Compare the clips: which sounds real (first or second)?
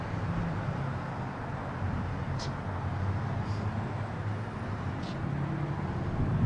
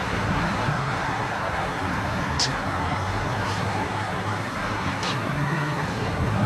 first